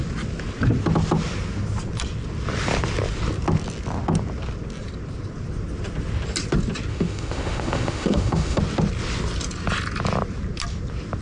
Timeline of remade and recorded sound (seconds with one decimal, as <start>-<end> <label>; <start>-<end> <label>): 0.0-6.9 recorded; 6.9-8.6 remade; 8.6-11.2 recorded